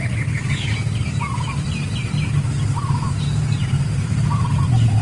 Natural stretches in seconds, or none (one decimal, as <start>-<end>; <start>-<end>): 0.0-5.0

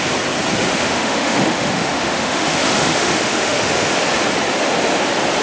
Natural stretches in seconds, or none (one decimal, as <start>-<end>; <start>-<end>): 0.0-0.7; 3.9-5.4

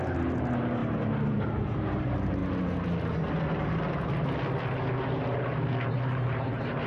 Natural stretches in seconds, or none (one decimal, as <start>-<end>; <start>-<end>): 2.4-5.9

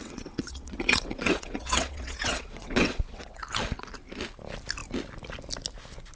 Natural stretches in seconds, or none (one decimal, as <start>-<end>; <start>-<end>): 3.4-6.2

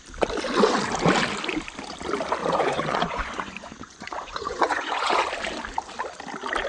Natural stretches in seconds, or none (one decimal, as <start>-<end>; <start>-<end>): 0.0-2.4; 5.2-6.7

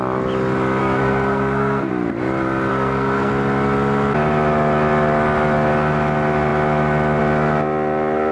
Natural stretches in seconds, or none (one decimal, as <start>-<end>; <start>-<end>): 0.0-0.8; 1.9-2.7; 3.3-8.3

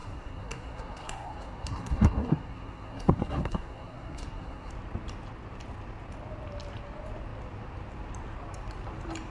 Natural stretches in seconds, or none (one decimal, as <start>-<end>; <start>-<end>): 4.7-9.3

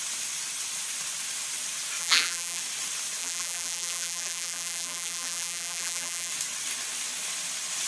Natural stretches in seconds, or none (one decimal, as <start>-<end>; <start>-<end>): 0.0-2.0; 2.6-3.2; 6.3-7.9